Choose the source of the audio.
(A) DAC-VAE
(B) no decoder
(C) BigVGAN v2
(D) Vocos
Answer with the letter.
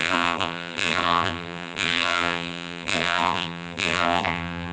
C